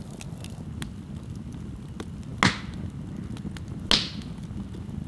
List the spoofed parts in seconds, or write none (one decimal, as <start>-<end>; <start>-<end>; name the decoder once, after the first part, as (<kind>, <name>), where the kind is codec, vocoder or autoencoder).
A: none

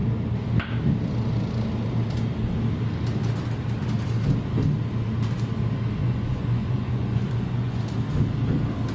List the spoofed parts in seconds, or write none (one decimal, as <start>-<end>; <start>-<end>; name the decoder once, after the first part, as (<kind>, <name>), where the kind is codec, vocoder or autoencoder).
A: 6.0-7.8 (vocoder, Vocos)

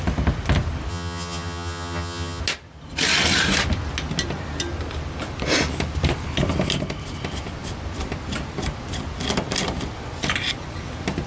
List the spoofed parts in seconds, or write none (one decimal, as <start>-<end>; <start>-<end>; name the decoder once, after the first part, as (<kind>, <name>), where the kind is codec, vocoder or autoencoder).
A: 0.9-2.4 (vocoder, HiFi-GAN)